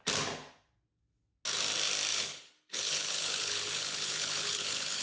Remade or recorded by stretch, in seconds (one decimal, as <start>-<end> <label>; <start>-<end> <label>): 0.0-2.1 recorded; 2.1-5.0 remade